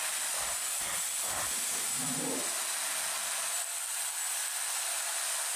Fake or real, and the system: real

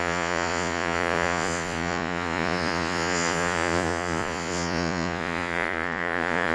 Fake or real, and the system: fake, vocoder, Vocos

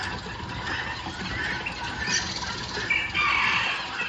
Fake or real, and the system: real